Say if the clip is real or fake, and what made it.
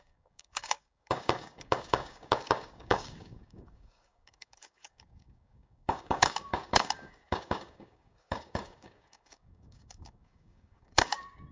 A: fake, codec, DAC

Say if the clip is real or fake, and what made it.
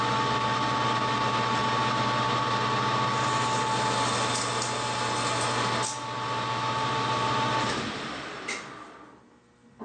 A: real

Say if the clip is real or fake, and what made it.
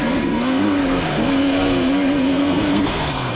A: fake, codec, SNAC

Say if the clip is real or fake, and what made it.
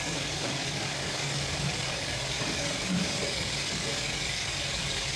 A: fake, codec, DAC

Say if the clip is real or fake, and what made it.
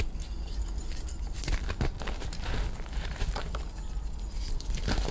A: real